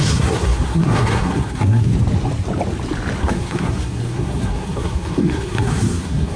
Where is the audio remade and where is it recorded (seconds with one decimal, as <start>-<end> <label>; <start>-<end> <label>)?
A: 0.0-1.9 remade; 1.9-3.2 recorded; 3.2-6.4 remade